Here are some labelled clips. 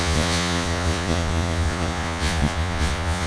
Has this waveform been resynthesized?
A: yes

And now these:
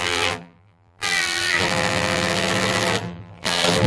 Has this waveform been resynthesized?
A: yes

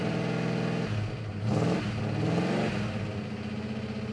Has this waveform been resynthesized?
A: no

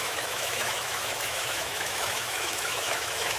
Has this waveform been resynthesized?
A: yes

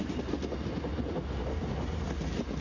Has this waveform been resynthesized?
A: no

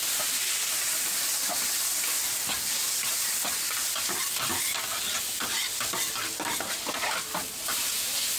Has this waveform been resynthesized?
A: no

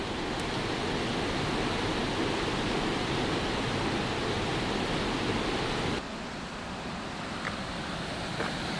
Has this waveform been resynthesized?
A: no